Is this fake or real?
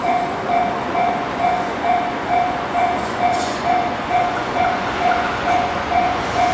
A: fake